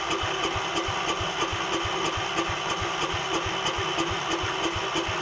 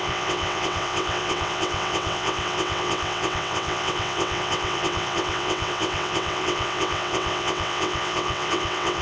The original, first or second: first